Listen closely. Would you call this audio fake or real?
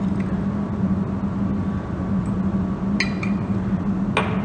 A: real